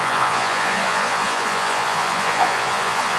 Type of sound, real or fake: fake